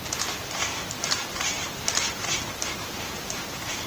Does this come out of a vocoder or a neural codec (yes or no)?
yes